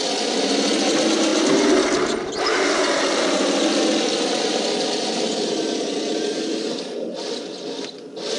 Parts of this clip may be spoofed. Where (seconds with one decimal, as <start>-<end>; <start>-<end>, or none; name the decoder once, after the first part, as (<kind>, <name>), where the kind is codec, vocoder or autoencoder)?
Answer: none